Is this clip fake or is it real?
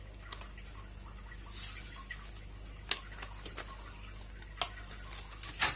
real